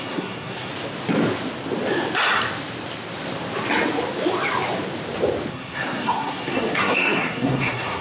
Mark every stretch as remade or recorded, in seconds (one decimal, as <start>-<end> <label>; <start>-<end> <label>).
0.0-0.7 remade; 0.7-5.5 recorded; 5.5-8.0 remade